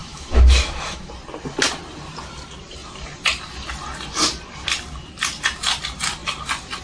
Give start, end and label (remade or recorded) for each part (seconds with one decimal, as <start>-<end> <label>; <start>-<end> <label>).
0.0-1.1 remade; 1.1-6.8 recorded